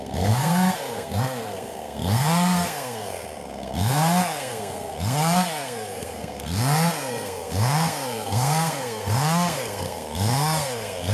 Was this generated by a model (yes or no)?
yes